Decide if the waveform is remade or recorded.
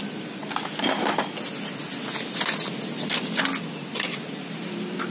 recorded